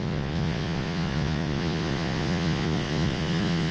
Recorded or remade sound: remade